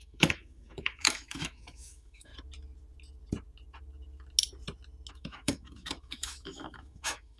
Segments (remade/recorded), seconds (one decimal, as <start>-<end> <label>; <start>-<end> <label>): 0.0-2.3 remade; 2.3-5.1 recorded; 5.1-7.4 remade